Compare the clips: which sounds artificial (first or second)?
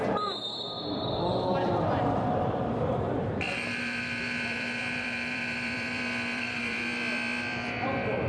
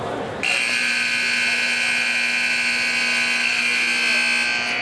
first